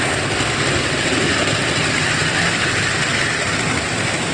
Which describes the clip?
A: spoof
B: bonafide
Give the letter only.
B